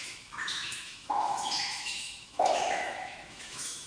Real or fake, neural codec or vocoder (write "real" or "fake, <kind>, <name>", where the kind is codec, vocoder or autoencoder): fake, autoencoder, DAC-VAE